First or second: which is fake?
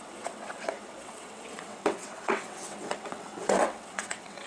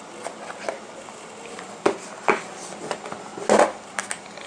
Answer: first